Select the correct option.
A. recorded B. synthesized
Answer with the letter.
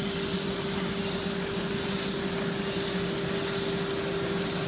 A